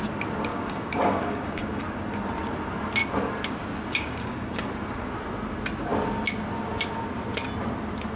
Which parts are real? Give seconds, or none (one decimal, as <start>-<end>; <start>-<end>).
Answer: 0.0-0.5; 1.8-3.9; 4.7-8.2